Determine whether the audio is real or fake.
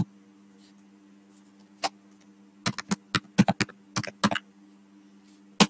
real